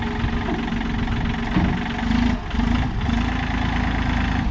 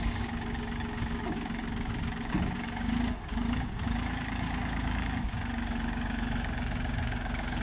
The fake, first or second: second